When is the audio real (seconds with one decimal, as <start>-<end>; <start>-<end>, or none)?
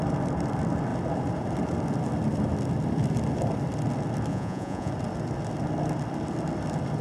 0.0-4.3; 4.9-7.0